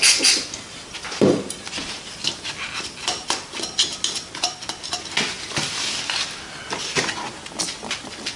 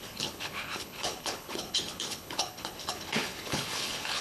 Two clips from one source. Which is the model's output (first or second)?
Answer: second